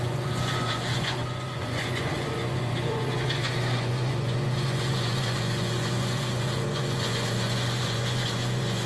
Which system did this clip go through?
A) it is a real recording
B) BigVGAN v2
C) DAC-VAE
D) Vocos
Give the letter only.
D